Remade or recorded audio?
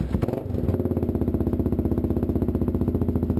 recorded